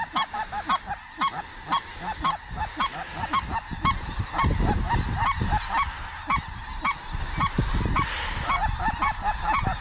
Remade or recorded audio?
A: recorded